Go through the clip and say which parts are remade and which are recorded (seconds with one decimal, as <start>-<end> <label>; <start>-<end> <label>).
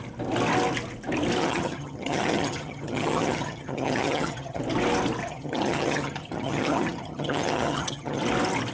0.0-1.4 recorded; 1.4-4.6 remade; 4.6-5.2 recorded; 5.2-8.2 remade; 8.2-8.7 recorded